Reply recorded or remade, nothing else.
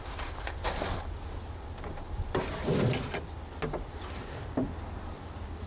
recorded